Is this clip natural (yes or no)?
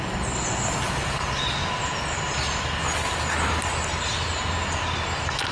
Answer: yes